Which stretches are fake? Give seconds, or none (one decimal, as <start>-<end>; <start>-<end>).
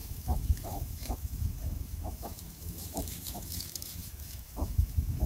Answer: 0.0-5.3